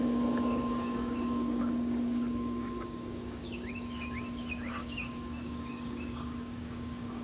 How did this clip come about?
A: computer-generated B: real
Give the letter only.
A